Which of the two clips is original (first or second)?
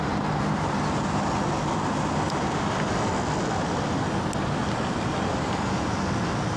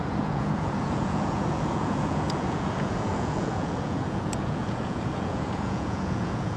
first